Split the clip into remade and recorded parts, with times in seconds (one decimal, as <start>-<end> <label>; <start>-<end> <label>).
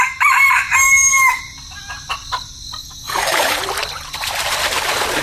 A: 0.0-0.8 recorded; 0.8-1.4 remade; 1.4-2.8 recorded; 2.8-3.6 remade; 3.6-5.2 recorded